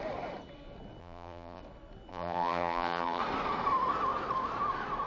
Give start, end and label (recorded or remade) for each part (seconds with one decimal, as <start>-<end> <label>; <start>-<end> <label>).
0.0-1.0 recorded; 1.0-1.6 remade; 1.6-2.1 recorded; 2.1-3.2 remade; 3.2-5.1 recorded